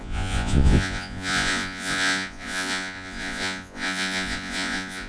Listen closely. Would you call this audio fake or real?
fake